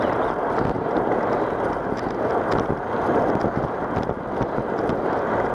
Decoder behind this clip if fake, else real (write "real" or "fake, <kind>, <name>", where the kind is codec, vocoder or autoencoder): real